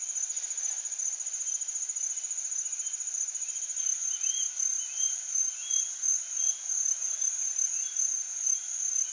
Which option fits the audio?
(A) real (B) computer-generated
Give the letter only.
A